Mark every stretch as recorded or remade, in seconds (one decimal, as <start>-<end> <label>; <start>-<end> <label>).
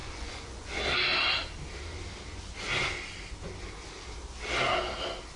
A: 0.0-0.8 remade; 0.8-5.4 recorded